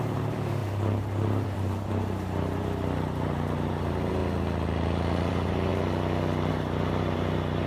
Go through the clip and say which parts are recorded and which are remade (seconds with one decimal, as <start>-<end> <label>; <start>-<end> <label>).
0.0-4.2 remade; 4.2-5.3 recorded; 5.3-5.7 remade; 5.7-6.5 recorded; 6.5-7.7 remade